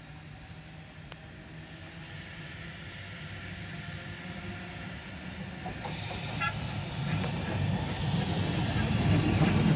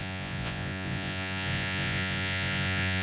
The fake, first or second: second